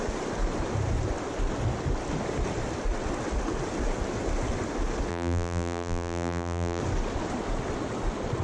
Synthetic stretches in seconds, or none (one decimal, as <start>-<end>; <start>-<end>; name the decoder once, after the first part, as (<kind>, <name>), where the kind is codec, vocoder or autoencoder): 5.1-6.8 (vocoder, BigVGAN v2)

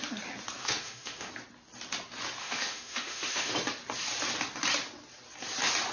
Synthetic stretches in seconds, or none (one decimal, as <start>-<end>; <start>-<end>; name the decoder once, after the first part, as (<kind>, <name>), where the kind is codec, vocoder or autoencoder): 0.6-1.3 (autoencoder, DAC-VAE); 2.4-3.5

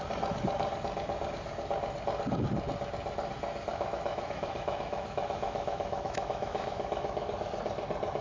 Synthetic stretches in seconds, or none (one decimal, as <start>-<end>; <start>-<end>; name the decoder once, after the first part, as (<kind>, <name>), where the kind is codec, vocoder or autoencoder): 3.7-7.3 (autoencoder, DAC-VAE)

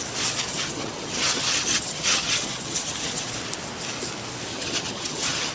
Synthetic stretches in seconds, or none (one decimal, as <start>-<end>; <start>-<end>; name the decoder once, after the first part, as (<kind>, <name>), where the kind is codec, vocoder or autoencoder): 0.5-3.3 (vocoder, HiFi-GAN); 4.5-5.5

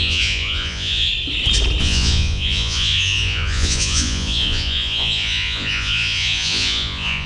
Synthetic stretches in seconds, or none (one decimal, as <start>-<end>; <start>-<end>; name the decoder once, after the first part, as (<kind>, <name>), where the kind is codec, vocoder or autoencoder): 0.0-1.1 (vocoder, Vocos); 1.8-7.3